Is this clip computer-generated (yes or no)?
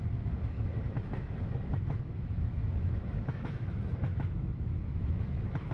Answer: yes